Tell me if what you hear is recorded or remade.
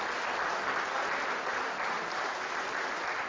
recorded